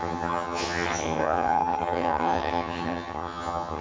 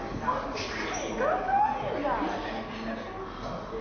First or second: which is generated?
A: first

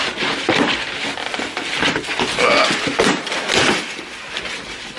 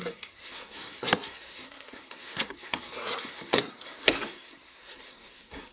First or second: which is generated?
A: second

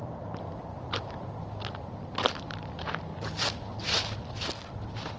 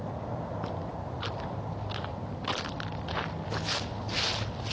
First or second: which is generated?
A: first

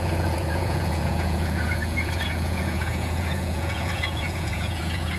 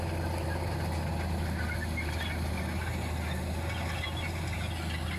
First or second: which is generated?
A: first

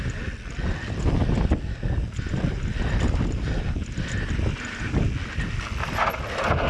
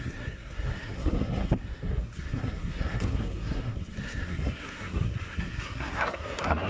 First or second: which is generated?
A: second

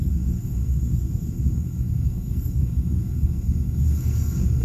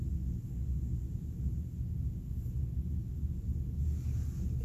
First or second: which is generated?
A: first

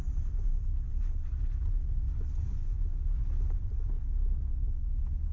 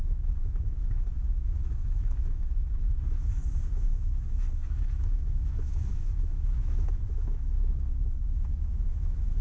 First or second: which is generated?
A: second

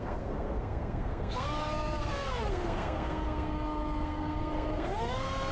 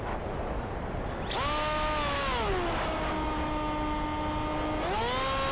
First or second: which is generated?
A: first